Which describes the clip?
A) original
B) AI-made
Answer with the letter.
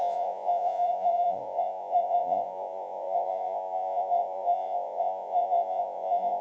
B